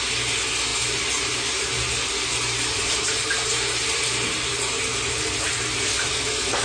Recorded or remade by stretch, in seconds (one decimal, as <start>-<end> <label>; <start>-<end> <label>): 0.0-0.7 recorded; 0.7-4.7 remade; 4.7-6.6 recorded